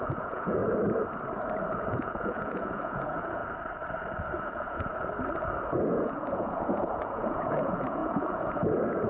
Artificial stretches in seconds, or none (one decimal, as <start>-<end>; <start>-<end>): 0.0-0.6; 1.7-3.4; 4.4-4.9; 5.9-9.1